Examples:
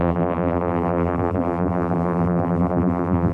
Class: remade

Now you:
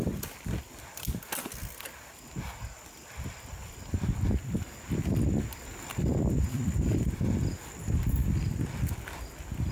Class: recorded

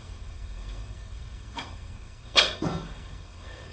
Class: remade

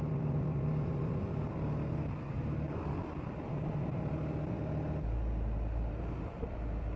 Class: recorded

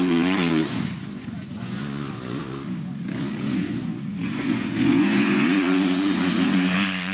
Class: remade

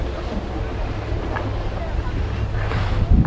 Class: recorded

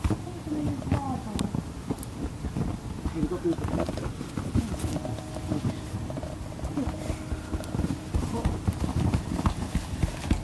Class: recorded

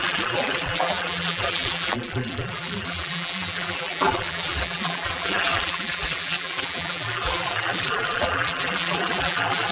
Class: remade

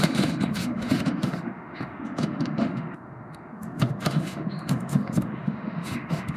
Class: remade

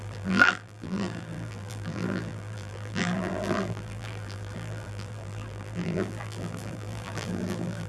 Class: remade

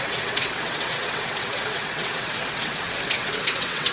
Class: remade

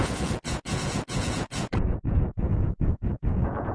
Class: remade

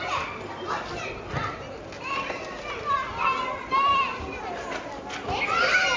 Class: recorded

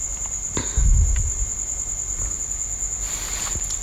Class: recorded